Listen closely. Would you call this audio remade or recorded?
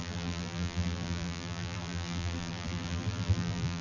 remade